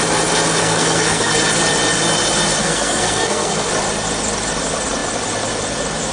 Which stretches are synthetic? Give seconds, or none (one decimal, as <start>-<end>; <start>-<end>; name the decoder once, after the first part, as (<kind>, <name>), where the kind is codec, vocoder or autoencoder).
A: 0.6-1.3 (codec, SNAC); 2.6-3.7